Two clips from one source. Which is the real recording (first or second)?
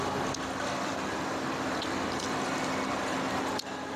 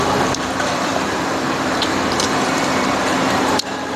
first